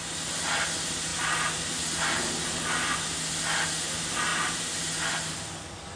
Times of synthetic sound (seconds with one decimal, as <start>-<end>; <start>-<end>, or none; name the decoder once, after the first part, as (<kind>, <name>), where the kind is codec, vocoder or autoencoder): none